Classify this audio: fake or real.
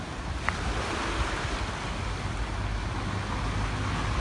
real